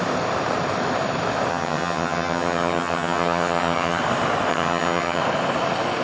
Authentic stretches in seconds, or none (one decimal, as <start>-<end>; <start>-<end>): 0.0-1.5; 4.0-4.5; 5.2-6.0